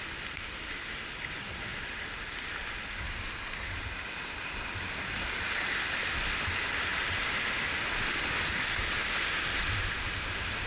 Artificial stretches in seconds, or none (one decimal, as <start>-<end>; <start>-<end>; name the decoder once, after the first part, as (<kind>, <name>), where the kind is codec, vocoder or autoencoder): none